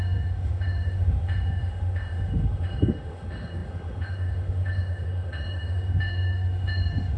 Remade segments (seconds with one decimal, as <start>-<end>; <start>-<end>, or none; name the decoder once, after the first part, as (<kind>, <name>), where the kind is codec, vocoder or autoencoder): 0.0-7.2 (autoencoder, DAC-VAE)